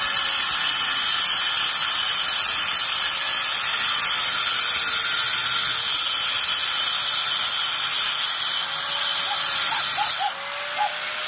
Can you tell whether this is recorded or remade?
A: recorded